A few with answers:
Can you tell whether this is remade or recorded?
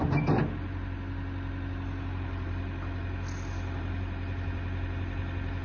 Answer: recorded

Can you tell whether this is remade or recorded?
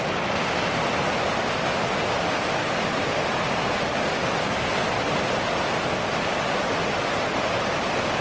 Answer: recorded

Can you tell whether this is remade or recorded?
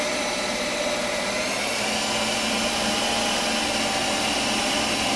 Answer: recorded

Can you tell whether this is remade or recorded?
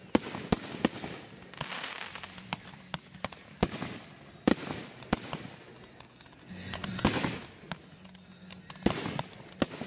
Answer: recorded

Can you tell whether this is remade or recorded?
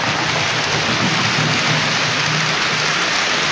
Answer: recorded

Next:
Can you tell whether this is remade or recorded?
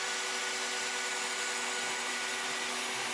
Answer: recorded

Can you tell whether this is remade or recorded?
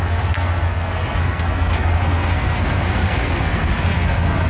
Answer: remade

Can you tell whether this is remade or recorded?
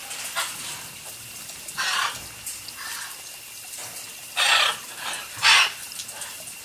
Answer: recorded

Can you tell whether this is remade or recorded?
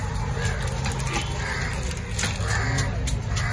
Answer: recorded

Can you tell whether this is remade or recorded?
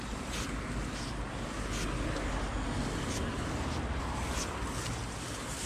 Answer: recorded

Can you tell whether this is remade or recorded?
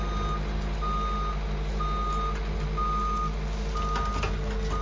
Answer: recorded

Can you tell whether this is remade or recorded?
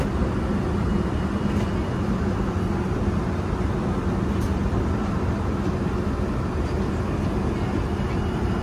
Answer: recorded